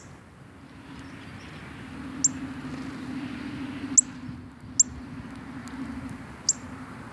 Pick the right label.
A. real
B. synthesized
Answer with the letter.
A